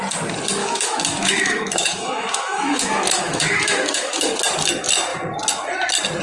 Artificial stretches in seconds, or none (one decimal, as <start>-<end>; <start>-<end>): 0.6-4.3